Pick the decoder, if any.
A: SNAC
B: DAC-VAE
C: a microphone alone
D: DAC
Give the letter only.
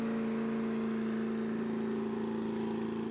C